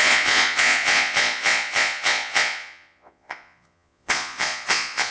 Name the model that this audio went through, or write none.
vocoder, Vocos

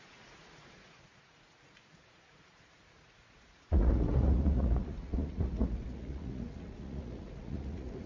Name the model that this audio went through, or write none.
vocoder, Vocos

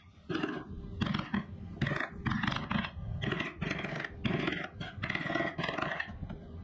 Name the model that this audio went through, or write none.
none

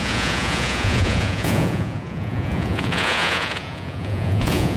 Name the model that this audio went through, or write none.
vocoder, Vocos